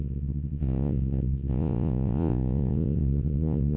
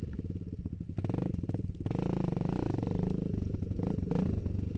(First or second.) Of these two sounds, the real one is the second